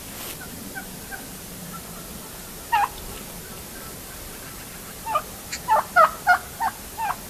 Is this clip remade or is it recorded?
recorded